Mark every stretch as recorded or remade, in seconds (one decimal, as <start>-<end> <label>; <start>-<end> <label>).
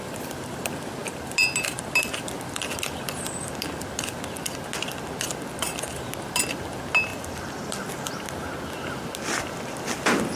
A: 0.0-0.6 remade; 0.6-7.1 recorded; 7.1-7.9 remade; 7.9-10.4 recorded